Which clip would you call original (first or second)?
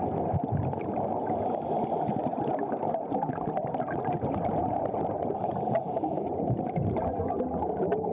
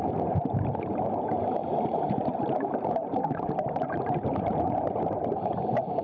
first